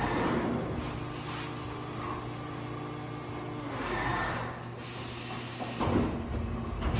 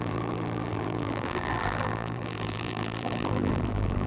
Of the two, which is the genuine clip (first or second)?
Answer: first